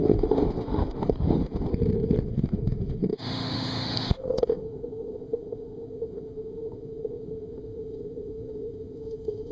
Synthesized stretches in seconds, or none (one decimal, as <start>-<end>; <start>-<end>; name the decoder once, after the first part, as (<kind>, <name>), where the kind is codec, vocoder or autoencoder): 0.0-1.7 (autoencoder, DAC-VAE); 2.2-9.5